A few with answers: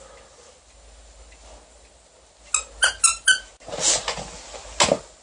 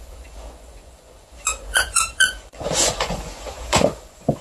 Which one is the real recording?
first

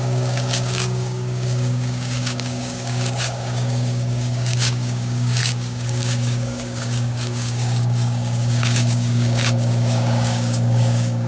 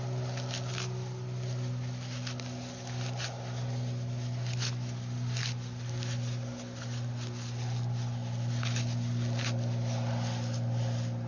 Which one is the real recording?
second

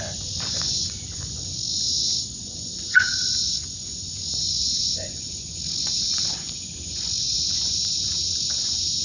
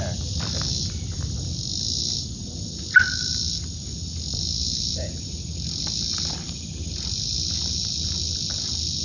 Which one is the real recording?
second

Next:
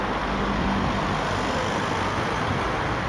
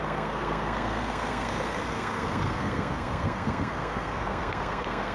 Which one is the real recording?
first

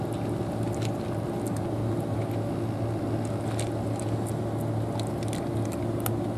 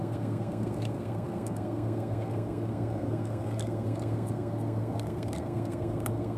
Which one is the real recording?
first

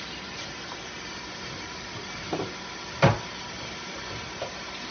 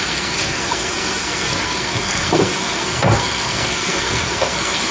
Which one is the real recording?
first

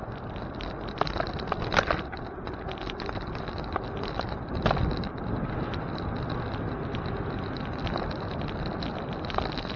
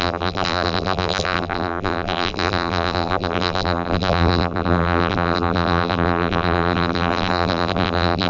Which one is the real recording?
first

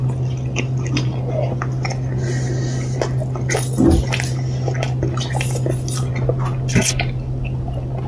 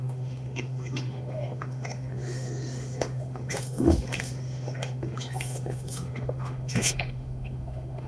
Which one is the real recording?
first